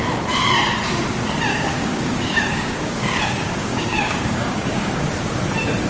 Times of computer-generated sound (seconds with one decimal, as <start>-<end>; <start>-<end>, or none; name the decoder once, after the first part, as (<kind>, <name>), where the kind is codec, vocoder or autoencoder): 1.5-5.0 (codec, DAC)